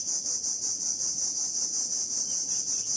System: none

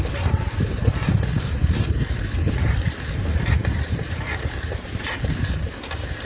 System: vocoder, BigVGAN v2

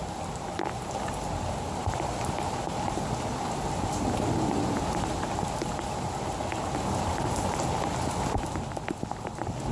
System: none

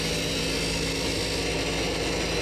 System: none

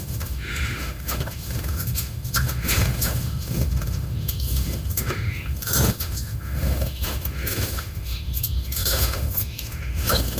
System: autoencoder, DAC-VAE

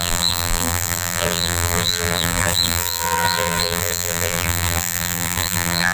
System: vocoder, BigVGAN v2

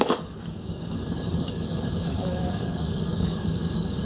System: codec, DAC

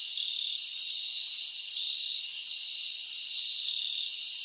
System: none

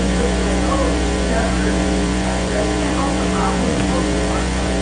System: vocoder, Vocos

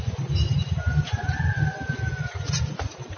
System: none